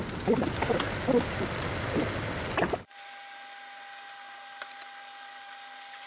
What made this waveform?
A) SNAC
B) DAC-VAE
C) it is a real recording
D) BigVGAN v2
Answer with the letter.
C